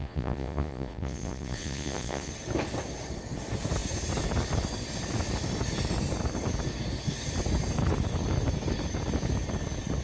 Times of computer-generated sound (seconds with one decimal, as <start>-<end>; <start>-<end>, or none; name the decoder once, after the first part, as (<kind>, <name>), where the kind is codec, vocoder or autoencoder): 0.0-2.3 (vocoder, Vocos)